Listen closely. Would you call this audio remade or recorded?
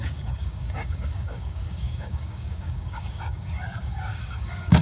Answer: remade